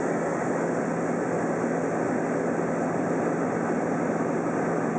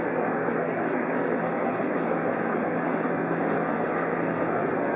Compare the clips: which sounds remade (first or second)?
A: second